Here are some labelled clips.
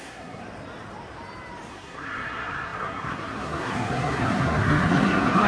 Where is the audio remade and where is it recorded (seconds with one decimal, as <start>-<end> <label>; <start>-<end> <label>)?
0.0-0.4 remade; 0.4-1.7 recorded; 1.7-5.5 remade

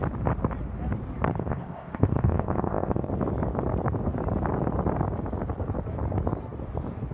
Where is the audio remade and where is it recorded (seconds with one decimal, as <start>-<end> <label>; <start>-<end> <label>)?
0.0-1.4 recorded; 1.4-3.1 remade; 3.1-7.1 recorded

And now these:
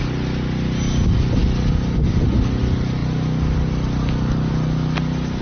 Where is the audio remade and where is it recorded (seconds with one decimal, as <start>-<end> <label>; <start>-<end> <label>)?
0.0-5.4 recorded

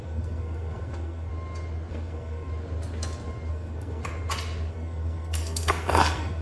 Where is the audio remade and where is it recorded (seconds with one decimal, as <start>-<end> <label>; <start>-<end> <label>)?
0.0-1.3 remade; 1.3-1.9 recorded; 1.9-2.5 remade; 2.5-3.5 recorded; 3.5-4.0 remade; 4.0-4.7 recorded; 4.7-6.4 remade

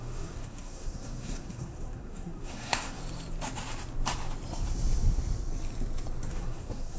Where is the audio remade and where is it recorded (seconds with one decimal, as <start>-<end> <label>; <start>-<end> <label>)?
0.0-3.0 remade; 3.0-6.3 recorded; 6.3-7.0 remade